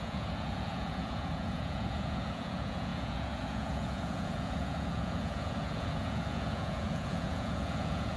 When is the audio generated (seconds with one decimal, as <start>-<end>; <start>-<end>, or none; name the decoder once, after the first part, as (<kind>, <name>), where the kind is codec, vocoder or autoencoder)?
0.0-8.2 (vocoder, Vocos)